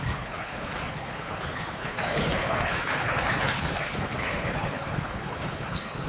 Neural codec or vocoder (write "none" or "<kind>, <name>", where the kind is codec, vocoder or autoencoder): codec, HILCodec